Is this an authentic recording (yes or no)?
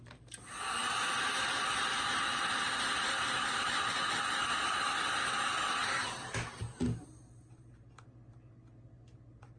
yes